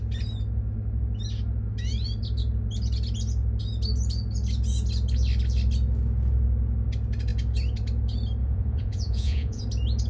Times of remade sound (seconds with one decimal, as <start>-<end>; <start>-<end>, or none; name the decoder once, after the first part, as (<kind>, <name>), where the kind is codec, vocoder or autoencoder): 8.4-9.6 (vocoder, Vocos)

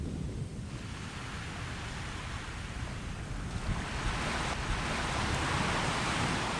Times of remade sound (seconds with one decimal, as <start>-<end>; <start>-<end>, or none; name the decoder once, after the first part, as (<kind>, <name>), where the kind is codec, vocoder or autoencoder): none

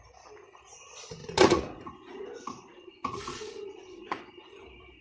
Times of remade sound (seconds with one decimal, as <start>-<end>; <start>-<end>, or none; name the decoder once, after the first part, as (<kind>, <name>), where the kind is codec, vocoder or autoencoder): 1.2-4.2 (vocoder, Vocos)

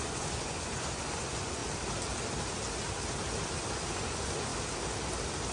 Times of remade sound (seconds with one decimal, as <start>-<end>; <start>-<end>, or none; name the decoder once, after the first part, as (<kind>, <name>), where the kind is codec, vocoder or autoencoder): 0.0-1.6 (vocoder, Vocos); 3.9-4.5

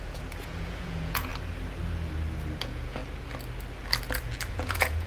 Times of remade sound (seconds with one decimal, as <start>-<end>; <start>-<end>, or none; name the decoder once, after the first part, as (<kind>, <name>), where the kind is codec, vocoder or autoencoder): 0.0-1.3 (vocoder, Vocos); 2.6-3.0; 4.5-5.1

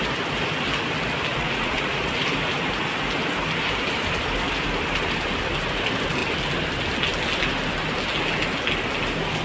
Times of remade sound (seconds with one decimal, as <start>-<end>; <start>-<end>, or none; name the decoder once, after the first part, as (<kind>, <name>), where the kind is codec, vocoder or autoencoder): 1.3-2.2 (vocoder, Vocos)

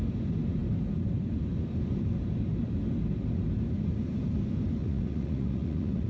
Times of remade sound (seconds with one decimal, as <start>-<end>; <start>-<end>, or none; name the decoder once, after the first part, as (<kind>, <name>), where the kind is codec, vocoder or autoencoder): 4.8-6.1 (vocoder, Vocos)